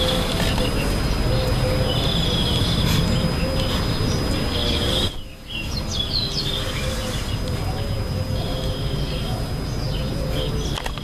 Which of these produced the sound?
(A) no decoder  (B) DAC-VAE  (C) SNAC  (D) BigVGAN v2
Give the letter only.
A